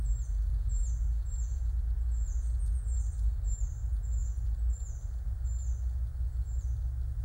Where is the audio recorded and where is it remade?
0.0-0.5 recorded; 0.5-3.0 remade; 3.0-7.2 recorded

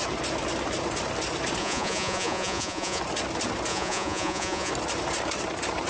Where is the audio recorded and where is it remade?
0.0-1.6 recorded; 1.6-3.0 remade; 3.0-3.7 recorded; 3.7-4.7 remade; 4.7-5.9 recorded

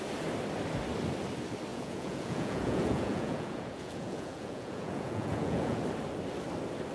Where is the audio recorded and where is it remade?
0.0-1.7 recorded; 1.7-5.8 remade; 5.8-6.9 recorded

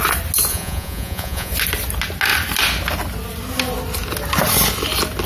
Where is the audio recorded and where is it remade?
0.0-0.5 recorded; 0.5-1.5 remade; 1.5-5.3 recorded